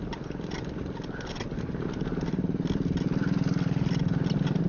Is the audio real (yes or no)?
yes